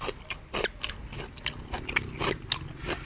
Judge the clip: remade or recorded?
recorded